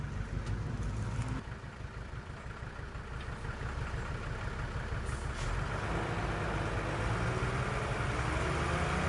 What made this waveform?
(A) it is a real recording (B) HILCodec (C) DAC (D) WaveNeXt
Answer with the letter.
A